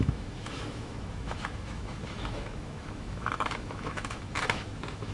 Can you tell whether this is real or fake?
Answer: fake